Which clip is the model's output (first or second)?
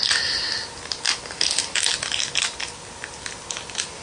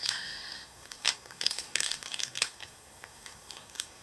second